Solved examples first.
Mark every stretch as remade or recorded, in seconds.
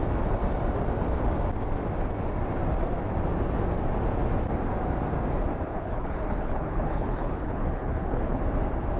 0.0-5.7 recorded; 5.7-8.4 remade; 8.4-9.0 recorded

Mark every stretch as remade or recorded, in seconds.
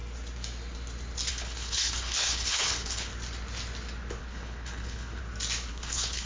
0.0-1.3 recorded; 1.3-3.1 remade; 3.1-4.2 recorded; 4.2-5.2 remade; 5.2-5.7 recorded; 5.7-6.3 remade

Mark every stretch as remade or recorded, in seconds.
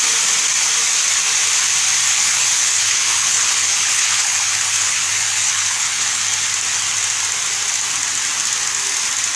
0.0-2.1 recorded; 2.1-6.2 remade; 6.2-9.4 recorded